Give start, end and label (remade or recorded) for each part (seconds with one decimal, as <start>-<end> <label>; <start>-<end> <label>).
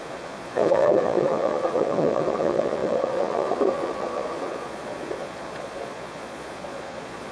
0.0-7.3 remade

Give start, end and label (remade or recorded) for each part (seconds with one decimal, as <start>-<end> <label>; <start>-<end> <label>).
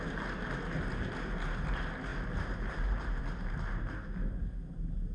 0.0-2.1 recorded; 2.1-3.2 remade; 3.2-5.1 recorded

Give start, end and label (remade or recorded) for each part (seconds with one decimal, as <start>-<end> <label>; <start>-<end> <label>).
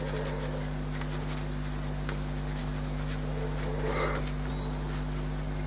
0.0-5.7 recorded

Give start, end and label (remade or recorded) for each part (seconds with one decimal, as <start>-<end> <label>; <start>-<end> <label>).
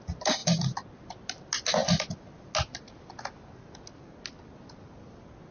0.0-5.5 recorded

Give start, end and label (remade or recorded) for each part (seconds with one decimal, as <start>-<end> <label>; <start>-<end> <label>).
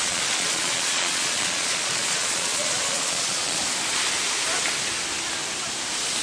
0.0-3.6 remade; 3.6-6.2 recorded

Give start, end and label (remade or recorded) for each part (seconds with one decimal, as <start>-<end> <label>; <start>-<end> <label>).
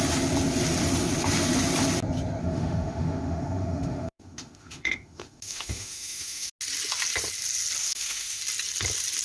0.0-2.4 recorded; 2.4-6.5 remade; 6.5-7.8 recorded; 7.8-8.4 remade; 8.4-9.2 recorded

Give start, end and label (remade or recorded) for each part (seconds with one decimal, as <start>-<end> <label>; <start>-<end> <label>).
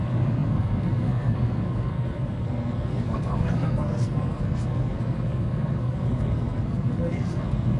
0.0-7.8 remade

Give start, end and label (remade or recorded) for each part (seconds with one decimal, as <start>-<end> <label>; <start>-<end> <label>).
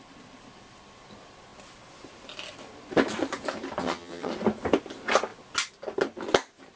0.0-3.8 recorded; 3.8-4.3 remade; 4.3-6.8 recorded